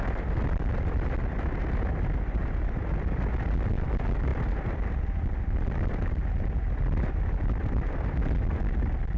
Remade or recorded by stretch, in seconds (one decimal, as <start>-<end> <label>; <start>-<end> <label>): 0.0-9.2 recorded